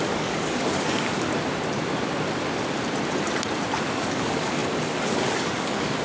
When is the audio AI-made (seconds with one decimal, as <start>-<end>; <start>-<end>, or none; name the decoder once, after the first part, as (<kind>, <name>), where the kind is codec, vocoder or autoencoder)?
0.0-1.3 (codec, DAC); 3.8-6.0